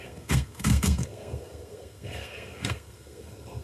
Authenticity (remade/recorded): remade